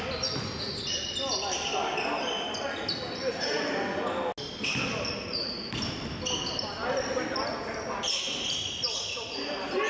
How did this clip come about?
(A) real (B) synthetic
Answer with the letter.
A